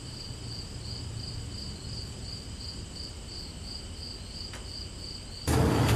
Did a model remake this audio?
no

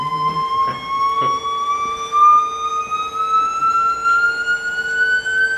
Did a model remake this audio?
no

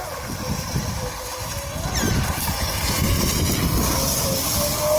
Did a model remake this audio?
yes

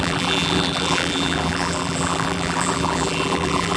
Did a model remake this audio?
yes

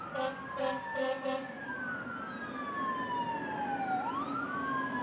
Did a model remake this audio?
no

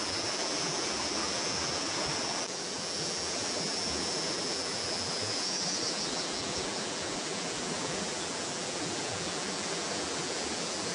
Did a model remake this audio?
yes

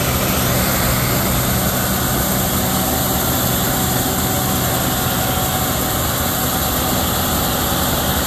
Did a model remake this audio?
no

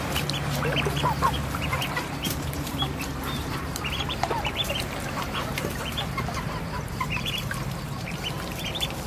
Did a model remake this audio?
yes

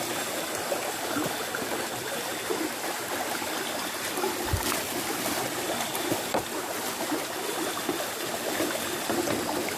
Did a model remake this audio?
yes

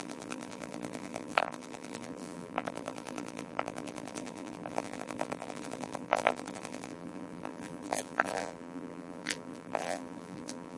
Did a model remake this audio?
yes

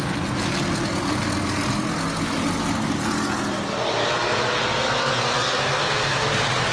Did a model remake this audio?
no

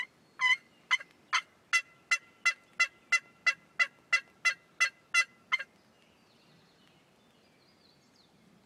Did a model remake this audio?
no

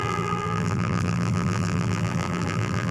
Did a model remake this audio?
yes